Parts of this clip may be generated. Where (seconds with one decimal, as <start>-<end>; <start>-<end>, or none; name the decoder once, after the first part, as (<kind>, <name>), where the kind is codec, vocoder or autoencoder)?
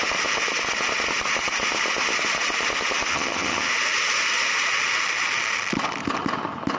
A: 3.1-3.7 (vocoder, HiFi-GAN)